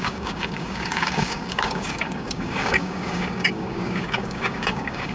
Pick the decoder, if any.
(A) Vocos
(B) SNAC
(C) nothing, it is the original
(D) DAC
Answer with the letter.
D